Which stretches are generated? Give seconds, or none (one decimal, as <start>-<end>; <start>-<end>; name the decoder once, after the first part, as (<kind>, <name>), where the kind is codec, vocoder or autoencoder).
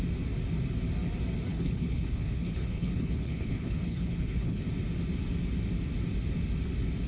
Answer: 1.5-4.6 (codec, HILCodec)